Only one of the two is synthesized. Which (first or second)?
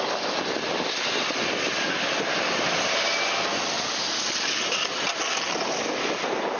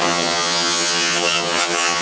second